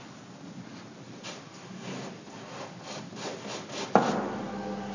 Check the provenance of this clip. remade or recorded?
recorded